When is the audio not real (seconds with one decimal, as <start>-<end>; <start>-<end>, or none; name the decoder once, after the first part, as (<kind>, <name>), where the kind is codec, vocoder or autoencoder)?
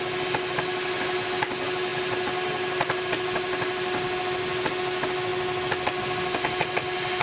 none